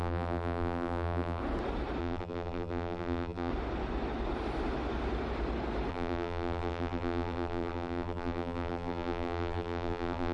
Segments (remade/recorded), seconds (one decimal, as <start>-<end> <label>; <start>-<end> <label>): 0.0-1.4 remade; 1.4-2.0 recorded; 2.0-3.5 remade; 3.5-5.9 recorded; 5.9-10.3 remade